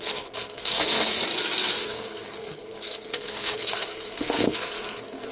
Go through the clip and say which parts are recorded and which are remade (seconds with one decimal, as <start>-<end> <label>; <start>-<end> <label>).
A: 0.0-1.2 remade; 1.2-1.7 recorded; 1.7-5.3 remade